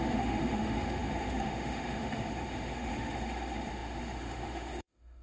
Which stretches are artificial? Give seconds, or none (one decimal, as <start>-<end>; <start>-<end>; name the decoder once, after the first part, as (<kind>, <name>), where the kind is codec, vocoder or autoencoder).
0.0-5.2 (autoencoder, DAC-VAE)